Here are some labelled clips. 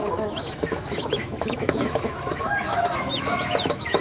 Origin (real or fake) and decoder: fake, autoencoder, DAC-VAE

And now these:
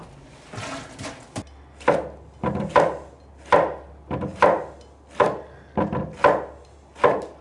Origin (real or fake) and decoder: real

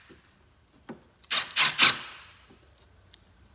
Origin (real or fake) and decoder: real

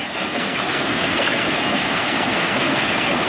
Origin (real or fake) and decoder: fake, codec, SNAC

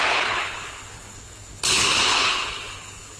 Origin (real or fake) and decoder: fake, codec, HILCodec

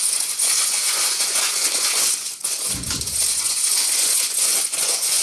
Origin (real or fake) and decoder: fake, vocoder, Vocos